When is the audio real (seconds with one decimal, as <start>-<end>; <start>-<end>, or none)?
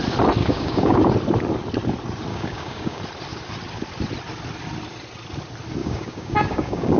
0.0-0.4; 1.0-2.3; 3.0-5.8